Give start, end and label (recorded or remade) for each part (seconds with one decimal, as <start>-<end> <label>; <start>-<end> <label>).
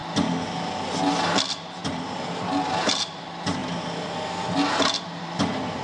0.0-0.9 recorded; 0.9-3.6 remade; 3.6-4.4 recorded; 4.4-5.8 remade